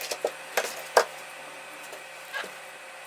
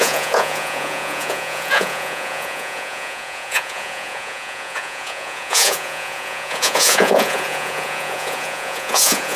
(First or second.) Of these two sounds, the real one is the first